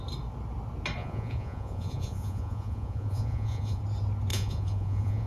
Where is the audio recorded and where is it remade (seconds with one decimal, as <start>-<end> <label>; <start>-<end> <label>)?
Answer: 0.0-1.0 recorded; 1.0-3.8 remade; 3.8-4.3 recorded; 4.3-5.3 remade